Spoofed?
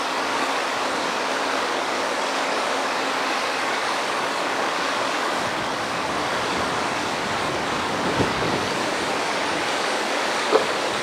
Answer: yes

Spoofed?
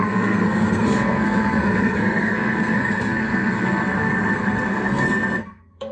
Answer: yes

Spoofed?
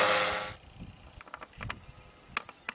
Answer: no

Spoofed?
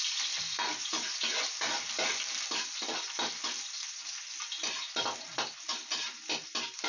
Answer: no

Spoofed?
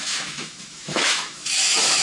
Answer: yes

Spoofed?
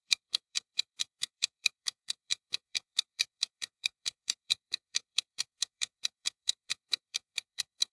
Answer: yes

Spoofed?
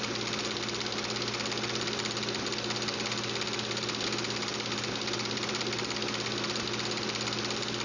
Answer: no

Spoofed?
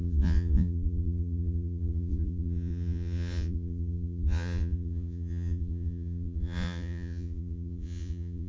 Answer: yes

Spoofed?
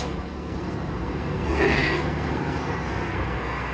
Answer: yes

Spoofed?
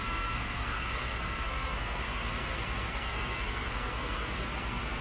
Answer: yes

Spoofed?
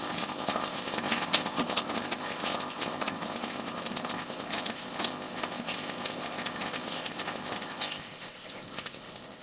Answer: yes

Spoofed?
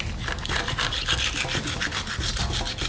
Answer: no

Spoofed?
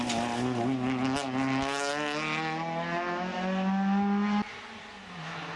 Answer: no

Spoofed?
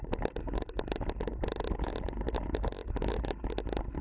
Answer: no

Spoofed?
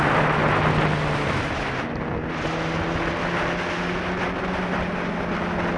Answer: no